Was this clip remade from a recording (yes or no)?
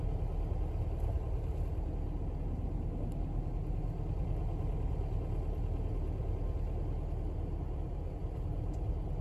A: no